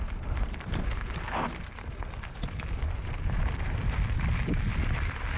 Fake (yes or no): yes